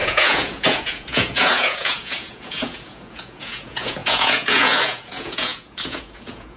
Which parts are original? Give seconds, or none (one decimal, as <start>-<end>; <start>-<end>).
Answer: none